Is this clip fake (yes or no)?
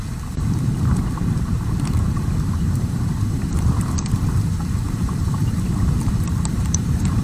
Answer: yes